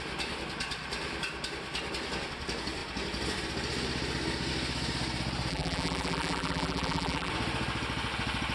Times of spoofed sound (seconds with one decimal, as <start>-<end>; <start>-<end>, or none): 5.5-7.3